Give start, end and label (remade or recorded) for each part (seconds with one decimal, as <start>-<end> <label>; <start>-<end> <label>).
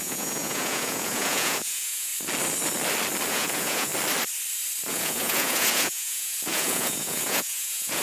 0.0-2.1 remade; 2.1-3.3 recorded; 3.3-3.9 remade; 3.9-4.9 recorded; 4.9-8.0 remade